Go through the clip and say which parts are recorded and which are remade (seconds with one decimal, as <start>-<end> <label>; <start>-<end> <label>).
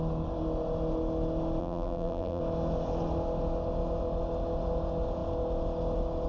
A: 0.0-1.6 recorded; 1.6-2.4 remade; 2.4-6.3 recorded